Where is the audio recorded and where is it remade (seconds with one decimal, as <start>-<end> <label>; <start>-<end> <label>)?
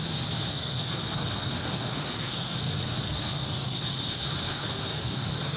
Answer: 0.0-0.5 recorded; 0.5-3.9 remade; 3.9-4.5 recorded; 4.5-5.6 remade